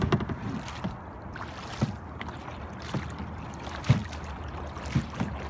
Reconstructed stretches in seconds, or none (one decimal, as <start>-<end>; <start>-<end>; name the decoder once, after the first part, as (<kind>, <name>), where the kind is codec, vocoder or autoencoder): none